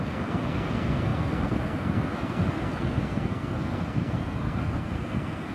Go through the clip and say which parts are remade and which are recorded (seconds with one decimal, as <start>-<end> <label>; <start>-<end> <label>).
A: 0.0-5.5 remade